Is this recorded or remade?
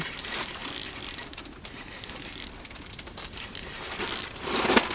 remade